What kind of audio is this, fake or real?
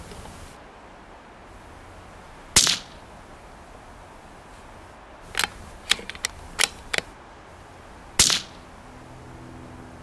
real